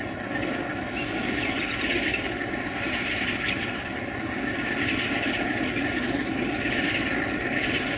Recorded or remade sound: recorded